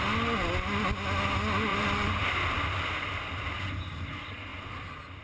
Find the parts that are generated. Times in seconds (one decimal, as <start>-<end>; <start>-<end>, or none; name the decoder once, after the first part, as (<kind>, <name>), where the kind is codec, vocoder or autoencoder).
1.7-3.5 (vocoder, BigVGAN v2); 4.5-5.2